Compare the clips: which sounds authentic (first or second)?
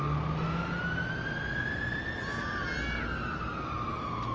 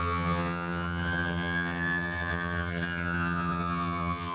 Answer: first